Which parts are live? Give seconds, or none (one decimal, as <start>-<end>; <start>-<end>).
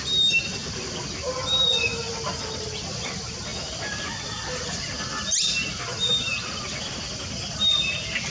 0.0-8.3